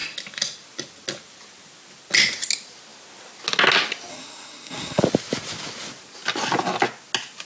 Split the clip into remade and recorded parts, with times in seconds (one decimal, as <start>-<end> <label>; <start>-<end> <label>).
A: 0.0-4.1 recorded; 4.1-5.0 remade; 5.0-7.4 recorded